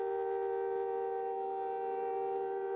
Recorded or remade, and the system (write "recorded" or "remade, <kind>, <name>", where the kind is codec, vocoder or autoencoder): recorded